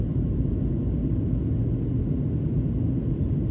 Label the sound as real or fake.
real